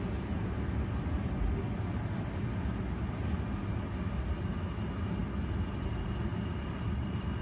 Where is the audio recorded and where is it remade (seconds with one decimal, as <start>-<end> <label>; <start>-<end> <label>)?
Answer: 0.0-7.4 recorded